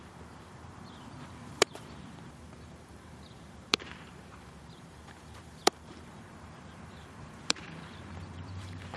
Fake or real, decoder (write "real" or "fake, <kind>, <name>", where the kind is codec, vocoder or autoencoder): fake, vocoder, BigVGAN v2